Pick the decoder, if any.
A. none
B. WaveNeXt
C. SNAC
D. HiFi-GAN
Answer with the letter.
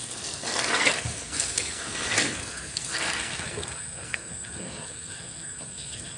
C